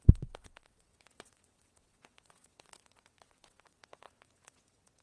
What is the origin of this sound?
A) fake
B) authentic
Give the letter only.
A